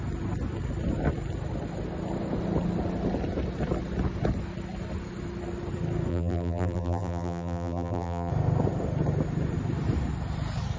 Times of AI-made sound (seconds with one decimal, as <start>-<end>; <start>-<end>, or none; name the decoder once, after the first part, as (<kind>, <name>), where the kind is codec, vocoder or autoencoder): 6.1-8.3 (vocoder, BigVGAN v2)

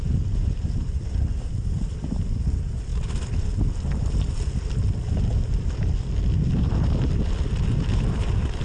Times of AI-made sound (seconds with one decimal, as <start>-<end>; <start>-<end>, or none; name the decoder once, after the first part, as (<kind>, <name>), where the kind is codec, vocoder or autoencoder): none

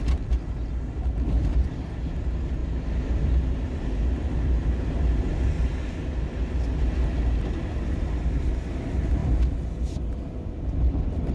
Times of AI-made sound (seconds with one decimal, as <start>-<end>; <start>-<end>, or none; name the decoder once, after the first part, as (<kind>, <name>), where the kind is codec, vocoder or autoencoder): none

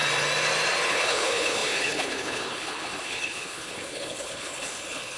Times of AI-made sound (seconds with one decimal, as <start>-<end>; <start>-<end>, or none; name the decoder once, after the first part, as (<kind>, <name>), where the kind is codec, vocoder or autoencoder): 0.9-5.2 (codec, HILCodec)

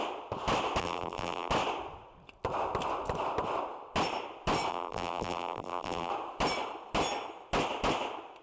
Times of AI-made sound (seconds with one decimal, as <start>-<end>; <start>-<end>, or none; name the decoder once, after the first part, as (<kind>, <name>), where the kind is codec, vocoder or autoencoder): 0.8-1.5 (vocoder, BigVGAN v2); 4.7-6.1